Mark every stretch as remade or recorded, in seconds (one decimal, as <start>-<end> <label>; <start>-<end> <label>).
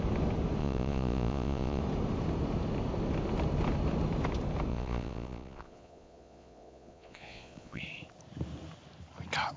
0.0-0.6 recorded; 0.6-1.8 remade; 1.8-4.7 recorded; 4.7-7.8 remade; 7.8-9.6 recorded